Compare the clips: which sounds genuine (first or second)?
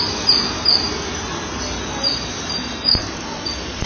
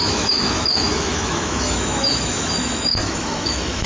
first